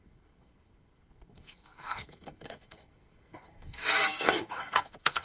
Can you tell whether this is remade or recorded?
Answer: remade